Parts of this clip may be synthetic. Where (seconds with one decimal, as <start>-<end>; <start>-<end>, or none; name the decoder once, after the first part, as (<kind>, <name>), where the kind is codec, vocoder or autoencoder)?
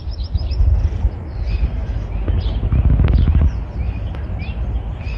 none